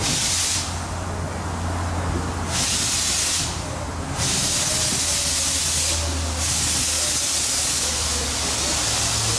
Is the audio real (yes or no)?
yes